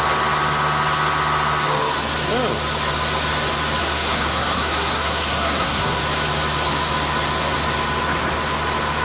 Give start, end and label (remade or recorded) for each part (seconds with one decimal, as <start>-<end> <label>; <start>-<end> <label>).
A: 0.0-3.8 recorded; 3.8-6.0 remade; 6.0-9.0 recorded